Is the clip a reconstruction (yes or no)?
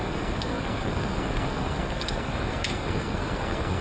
yes